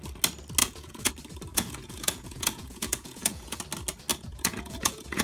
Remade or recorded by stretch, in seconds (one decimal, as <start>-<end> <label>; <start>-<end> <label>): 0.0-0.6 recorded; 0.6-1.1 remade; 1.1-1.5 recorded; 1.5-3.6 remade; 3.6-4.1 recorded; 4.1-5.2 remade